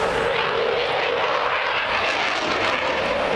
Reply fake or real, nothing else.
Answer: real